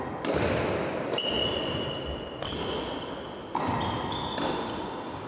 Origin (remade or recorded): recorded